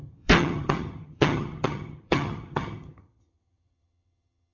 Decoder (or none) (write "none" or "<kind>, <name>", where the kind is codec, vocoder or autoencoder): vocoder, HiFi-GAN